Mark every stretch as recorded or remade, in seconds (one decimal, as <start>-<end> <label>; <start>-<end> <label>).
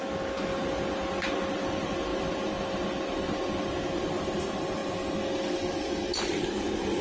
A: 0.0-7.0 recorded